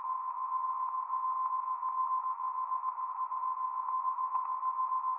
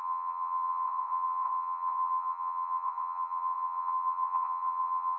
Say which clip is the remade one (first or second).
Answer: second